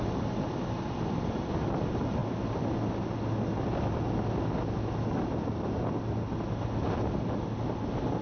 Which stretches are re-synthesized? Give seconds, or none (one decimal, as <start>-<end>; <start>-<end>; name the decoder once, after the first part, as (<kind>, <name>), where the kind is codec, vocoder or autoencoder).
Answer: none

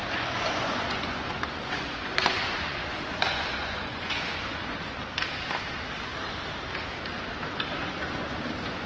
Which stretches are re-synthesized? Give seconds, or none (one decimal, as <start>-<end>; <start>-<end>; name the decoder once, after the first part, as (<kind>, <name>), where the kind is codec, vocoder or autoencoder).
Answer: 0.0-4.9 (vocoder, Vocos); 7.8-8.9

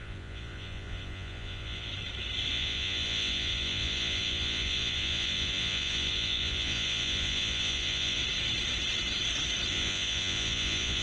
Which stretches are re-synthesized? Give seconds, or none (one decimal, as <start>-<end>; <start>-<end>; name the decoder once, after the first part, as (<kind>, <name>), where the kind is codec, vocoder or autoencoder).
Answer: 0.0-1.9 (vocoder, Vocos); 2.5-8.2; 9.7-11.0

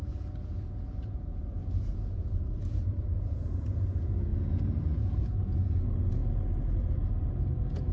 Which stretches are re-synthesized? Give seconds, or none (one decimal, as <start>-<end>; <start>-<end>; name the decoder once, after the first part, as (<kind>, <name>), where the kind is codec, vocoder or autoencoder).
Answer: 0.0-6.2 (vocoder, Vocos); 6.8-7.9

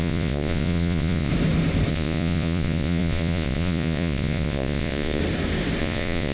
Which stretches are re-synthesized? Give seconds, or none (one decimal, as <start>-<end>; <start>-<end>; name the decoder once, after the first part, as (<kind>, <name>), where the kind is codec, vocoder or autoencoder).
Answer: 0.0-1.3 (vocoder, Vocos); 1.9-5.2; 5.8-6.3